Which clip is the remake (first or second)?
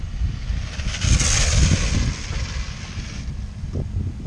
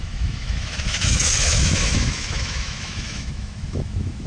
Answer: second